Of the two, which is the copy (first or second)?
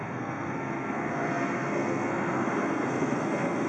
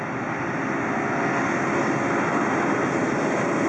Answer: first